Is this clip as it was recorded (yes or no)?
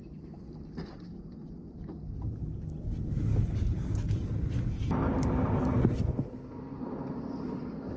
yes